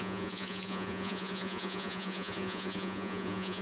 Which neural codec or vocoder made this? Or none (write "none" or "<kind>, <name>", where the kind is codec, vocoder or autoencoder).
vocoder, Vocos